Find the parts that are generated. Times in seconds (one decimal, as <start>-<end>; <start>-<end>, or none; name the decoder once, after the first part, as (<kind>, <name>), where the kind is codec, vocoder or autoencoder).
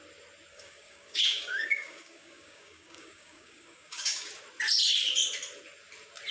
0.5-4.3 (codec, DAC)